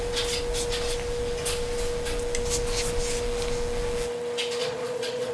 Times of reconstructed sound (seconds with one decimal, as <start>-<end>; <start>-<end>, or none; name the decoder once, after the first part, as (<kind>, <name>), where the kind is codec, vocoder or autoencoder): 4.6-5.3 (vocoder, Vocos)